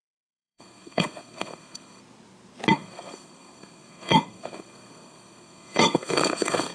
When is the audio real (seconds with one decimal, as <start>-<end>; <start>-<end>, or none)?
2.0-2.7